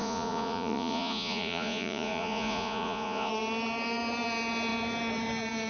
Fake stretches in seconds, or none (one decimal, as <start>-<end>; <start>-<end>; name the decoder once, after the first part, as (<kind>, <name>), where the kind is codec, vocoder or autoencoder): 0.0-3.3 (vocoder, Vocos)